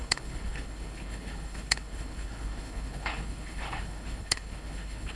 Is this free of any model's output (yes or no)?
no